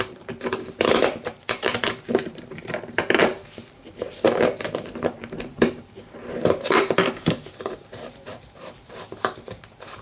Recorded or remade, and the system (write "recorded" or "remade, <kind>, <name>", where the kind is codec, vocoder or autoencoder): remade, vocoder, BigVGAN v2